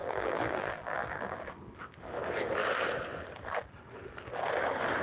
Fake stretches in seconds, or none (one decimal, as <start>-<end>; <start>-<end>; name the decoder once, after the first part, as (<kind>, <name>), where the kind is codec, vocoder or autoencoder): 0.0-1.4 (vocoder, BigVGAN v2)